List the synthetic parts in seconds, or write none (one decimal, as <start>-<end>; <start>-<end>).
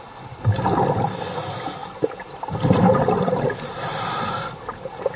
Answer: none